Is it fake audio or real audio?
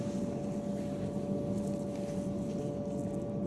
real